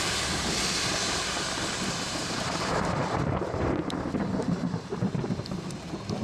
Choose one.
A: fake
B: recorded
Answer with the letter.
A